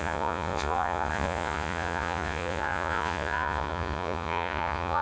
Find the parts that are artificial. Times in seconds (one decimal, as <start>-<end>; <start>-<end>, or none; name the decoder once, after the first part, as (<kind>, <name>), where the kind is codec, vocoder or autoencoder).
0.0-5.0 (vocoder, Vocos)

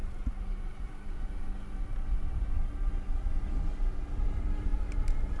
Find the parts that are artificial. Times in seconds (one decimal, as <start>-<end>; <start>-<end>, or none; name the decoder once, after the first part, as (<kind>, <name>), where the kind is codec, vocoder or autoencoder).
none

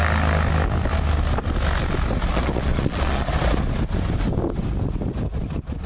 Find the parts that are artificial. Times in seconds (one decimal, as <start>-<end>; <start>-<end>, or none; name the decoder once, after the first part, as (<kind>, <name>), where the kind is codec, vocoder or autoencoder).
2.3-3.3 (vocoder, Vocos)

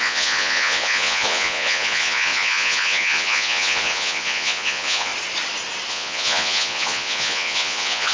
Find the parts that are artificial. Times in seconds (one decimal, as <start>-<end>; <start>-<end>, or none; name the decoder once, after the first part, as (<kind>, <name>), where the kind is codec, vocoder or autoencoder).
0.0-5.1 (vocoder, Vocos); 5.9-8.1

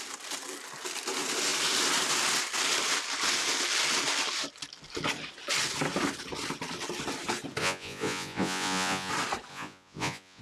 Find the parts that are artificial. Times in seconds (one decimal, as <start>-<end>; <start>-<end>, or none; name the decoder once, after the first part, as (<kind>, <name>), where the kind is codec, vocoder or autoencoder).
7.6-9.1 (vocoder, Vocos); 9.5-10.4

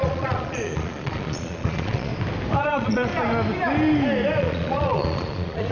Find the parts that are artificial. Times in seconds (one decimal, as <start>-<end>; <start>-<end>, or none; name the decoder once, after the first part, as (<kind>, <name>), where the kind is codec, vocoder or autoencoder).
0.0-2.1 (vocoder, Vocos); 2.6-3.1; 4.4-5.7

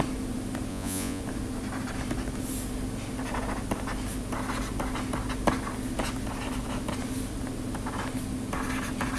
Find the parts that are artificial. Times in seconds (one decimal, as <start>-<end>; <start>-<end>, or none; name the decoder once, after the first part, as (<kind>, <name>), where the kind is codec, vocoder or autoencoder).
0.7-1.2 (vocoder, Vocos)